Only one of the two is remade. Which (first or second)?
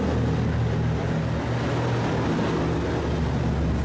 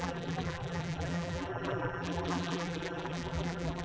second